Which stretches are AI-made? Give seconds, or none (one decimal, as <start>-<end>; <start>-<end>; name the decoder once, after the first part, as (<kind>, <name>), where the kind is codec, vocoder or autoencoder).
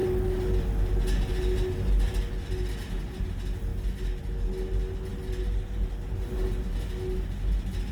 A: none